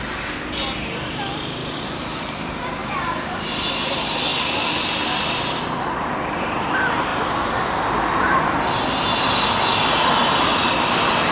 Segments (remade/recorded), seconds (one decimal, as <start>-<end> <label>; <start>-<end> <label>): 0.0-1.6 recorded; 1.6-2.2 remade; 2.2-2.8 recorded; 2.8-3.7 remade; 3.7-11.3 recorded